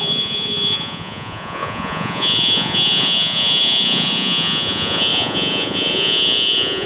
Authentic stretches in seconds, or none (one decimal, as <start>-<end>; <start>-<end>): none